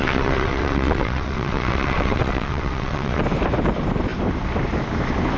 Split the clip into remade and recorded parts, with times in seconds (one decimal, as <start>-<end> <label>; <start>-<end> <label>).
0.0-3.2 remade; 3.2-5.4 recorded